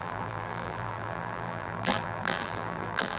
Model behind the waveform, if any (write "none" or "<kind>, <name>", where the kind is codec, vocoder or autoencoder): vocoder, BigVGAN v2